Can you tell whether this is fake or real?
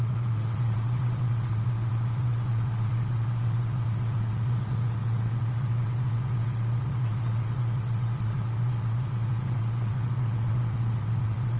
fake